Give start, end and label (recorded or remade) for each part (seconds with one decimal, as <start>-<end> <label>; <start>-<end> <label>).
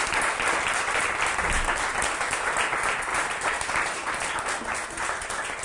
0.0-3.1 recorded; 3.1-4.3 remade; 4.3-5.6 recorded